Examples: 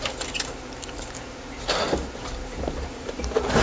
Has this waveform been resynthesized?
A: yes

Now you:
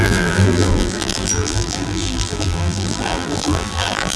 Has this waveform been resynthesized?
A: yes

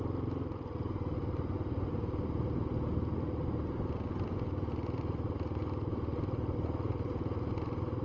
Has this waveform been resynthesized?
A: no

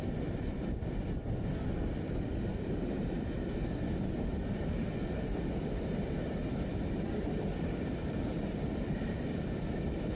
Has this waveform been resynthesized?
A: yes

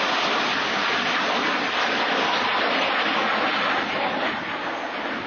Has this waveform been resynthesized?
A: no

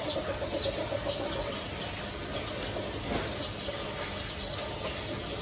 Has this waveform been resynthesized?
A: no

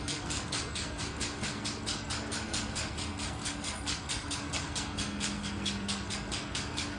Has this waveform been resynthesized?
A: yes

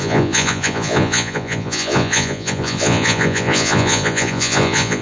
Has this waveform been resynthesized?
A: yes